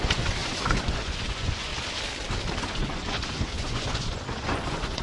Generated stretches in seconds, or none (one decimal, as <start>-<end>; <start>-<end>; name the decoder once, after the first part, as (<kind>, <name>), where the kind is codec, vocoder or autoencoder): 0.0-1.7 (vocoder, Vocos); 2.6-5.0